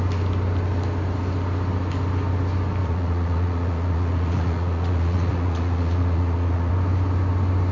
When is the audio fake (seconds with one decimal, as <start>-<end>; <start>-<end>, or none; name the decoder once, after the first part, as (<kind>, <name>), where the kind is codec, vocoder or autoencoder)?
2.8-6.7 (vocoder, Vocos)